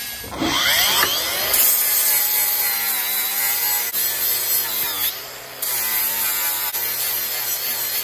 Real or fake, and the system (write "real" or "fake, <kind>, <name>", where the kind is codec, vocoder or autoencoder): real